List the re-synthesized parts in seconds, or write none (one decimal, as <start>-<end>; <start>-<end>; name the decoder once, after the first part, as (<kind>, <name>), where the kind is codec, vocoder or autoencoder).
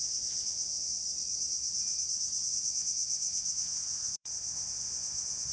0.0-1.0 (vocoder, Vocos); 2.5-5.5